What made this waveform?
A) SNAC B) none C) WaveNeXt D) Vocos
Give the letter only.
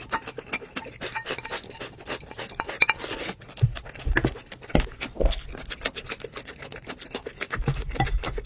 B